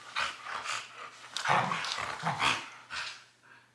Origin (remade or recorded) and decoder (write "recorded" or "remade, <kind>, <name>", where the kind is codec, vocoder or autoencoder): recorded